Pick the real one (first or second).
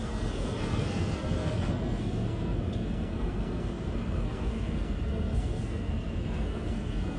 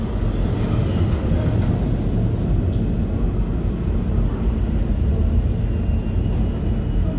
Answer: second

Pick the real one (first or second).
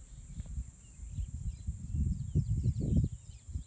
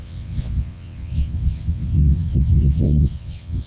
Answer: first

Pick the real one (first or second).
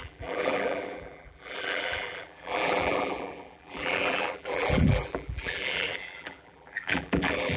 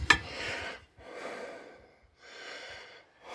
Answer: second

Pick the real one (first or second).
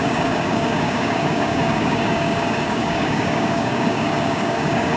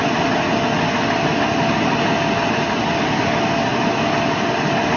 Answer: second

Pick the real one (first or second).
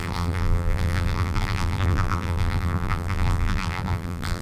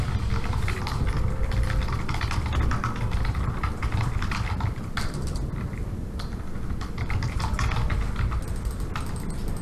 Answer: second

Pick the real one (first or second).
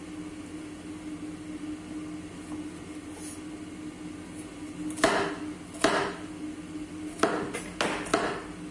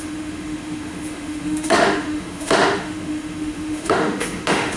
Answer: first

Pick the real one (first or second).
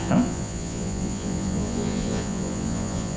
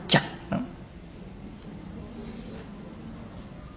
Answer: second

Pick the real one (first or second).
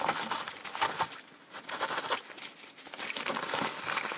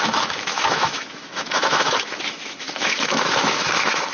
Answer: first